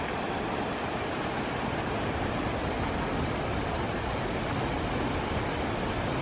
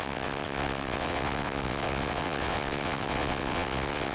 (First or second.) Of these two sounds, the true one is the first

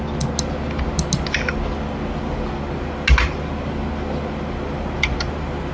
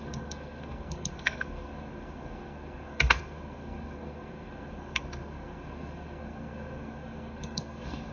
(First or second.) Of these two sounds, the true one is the first